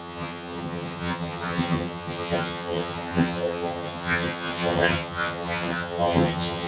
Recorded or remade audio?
remade